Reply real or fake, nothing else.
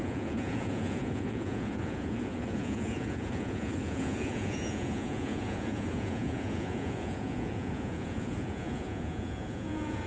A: fake